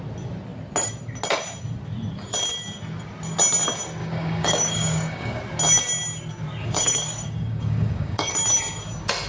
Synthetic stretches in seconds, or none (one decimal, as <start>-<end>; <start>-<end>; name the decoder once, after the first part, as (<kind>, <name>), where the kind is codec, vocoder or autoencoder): 4.0-5.4 (codec, DAC); 6.6-8.3